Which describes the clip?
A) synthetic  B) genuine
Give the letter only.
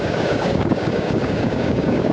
A